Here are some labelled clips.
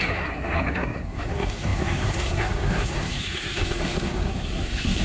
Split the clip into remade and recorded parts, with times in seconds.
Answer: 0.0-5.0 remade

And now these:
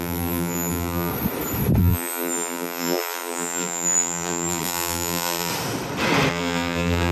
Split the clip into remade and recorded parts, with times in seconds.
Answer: 0.0-1.1 remade; 1.1-1.8 recorded; 1.8-5.5 remade; 5.5-6.3 recorded; 6.3-7.1 remade

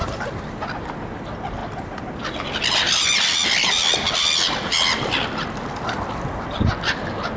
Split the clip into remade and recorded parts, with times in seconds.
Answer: 0.0-7.4 recorded

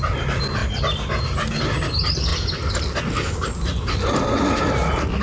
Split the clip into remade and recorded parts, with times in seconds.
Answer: 0.0-5.2 recorded

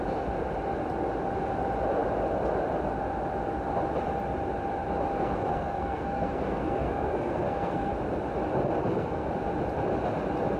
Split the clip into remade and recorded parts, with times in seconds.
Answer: 0.0-5.1 recorded; 5.1-7.9 remade; 7.9-8.8 recorded; 8.8-9.3 remade; 9.3-10.6 recorded

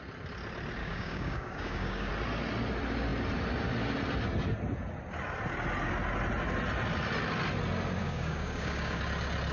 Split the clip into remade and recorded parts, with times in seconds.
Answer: 0.0-0.8 recorded; 0.8-2.1 remade; 2.1-8.0 recorded; 8.0-9.0 remade; 9.0-9.5 recorded

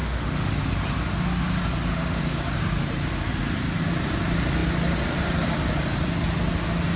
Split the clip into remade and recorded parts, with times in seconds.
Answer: 0.0-0.5 remade; 0.5-1.9 recorded; 1.9-2.4 remade; 2.4-7.0 recorded